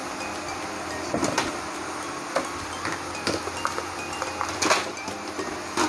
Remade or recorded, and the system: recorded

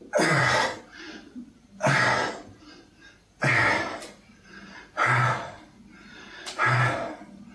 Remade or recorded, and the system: recorded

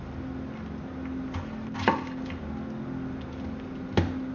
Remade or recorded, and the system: recorded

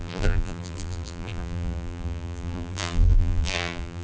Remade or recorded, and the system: remade, vocoder, BigVGAN v2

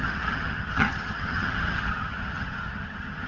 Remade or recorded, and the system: remade, vocoder, HiFi-GAN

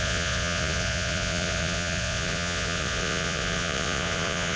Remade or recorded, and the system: remade, vocoder, Vocos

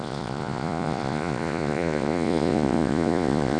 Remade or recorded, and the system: remade, vocoder, Vocos